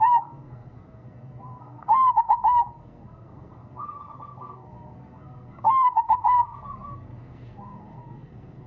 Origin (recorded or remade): remade